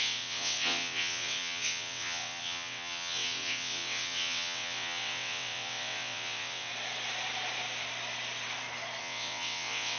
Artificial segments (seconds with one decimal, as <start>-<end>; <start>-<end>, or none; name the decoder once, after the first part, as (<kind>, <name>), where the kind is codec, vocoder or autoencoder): 0.0-6.7 (vocoder, WaveNeXt); 9.0-10.0